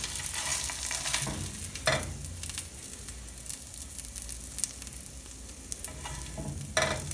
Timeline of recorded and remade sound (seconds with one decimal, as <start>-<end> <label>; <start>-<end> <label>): 0.0-7.1 recorded